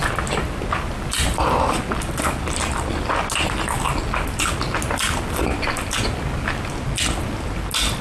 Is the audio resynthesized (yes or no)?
no